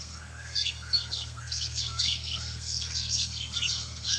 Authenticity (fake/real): fake